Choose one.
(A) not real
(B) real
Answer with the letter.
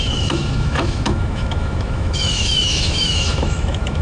A